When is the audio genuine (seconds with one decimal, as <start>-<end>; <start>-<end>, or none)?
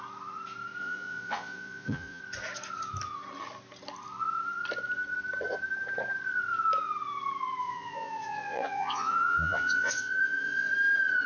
0.0-0.8; 2.2-7.6; 10.7-11.3